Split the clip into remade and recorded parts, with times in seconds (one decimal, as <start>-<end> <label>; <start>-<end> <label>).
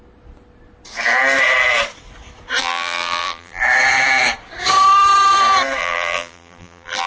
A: 0.0-2.6 recorded; 2.6-3.6 remade; 3.6-5.8 recorded; 5.8-7.1 remade